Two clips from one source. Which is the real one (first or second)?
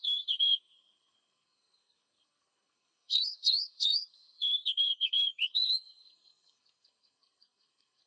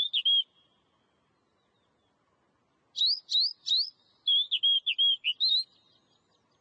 second